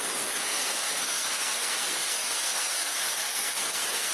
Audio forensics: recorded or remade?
remade